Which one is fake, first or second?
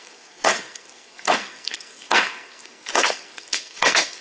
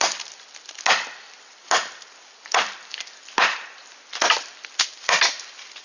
first